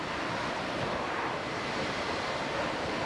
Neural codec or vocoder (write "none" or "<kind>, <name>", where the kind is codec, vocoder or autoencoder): none